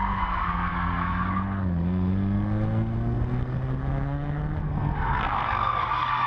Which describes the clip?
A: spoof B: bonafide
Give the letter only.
A